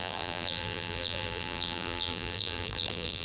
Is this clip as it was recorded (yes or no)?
no